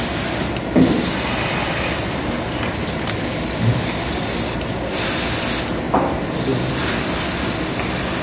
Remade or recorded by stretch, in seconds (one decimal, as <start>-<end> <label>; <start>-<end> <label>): 0.0-8.2 recorded